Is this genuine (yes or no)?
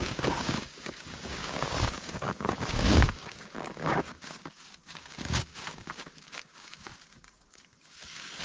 no